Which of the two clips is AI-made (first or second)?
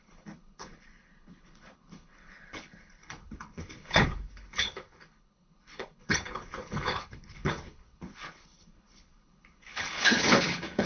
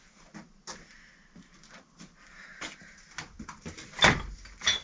first